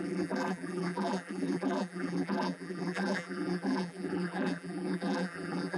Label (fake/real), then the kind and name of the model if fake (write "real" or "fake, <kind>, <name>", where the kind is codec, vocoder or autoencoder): fake, vocoder, BigVGAN v2